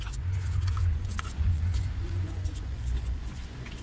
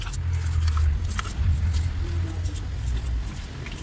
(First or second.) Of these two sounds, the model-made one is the first